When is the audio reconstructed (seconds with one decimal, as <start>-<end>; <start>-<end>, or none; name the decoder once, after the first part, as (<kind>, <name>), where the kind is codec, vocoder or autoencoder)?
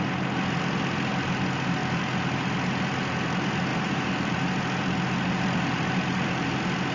3.7-4.5 (vocoder, BigVGAN v2)